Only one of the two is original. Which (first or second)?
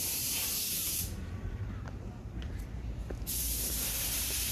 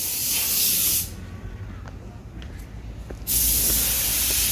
second